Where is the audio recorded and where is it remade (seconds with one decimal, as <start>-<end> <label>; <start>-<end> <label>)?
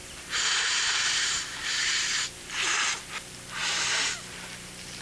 0.0-3.0 remade; 3.0-3.6 recorded; 3.6-4.1 remade; 4.1-5.0 recorded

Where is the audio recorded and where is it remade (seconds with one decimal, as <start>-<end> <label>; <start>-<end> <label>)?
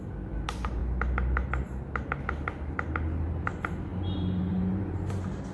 0.0-3.9 recorded; 3.9-5.1 remade; 5.1-5.5 recorded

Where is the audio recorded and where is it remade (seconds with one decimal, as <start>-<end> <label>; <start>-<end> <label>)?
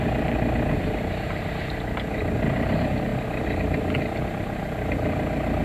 0.0-5.6 recorded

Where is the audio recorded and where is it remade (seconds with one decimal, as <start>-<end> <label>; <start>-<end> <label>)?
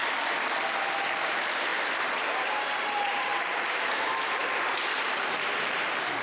0.0-1.2 recorded; 1.2-6.2 remade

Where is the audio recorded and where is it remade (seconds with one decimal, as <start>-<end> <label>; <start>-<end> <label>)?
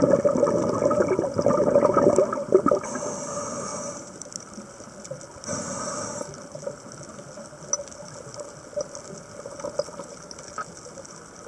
0.0-3.7 recorded; 3.7-4.3 remade; 4.3-11.5 recorded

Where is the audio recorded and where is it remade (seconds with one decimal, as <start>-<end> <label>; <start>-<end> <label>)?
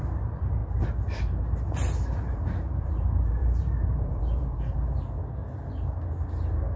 0.0-5.4 remade; 5.4-6.3 recorded; 6.3-6.8 remade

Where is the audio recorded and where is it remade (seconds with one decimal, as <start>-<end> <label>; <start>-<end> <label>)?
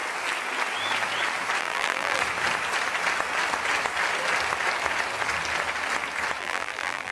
0.0-1.6 recorded; 1.6-2.2 remade; 2.2-6.4 recorded; 6.4-7.1 remade